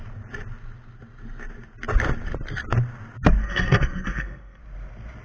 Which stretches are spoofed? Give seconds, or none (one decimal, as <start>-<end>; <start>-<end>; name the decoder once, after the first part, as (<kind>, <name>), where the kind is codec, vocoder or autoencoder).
3.4-4.6 (codec, SNAC)